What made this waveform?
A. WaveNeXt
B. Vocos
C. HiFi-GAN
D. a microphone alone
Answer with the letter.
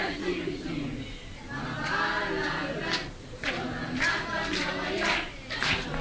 D